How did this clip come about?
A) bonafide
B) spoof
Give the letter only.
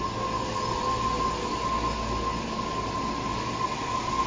A